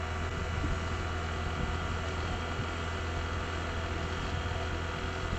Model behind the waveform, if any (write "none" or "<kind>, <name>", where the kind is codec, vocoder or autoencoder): none